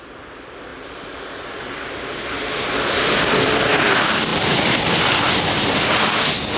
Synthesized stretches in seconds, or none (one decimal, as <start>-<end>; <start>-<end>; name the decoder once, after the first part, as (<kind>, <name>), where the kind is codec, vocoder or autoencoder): 0.7-1.5 (vocoder, BigVGAN v2); 4.3-5.0